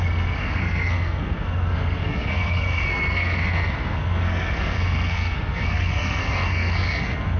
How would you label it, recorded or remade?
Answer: remade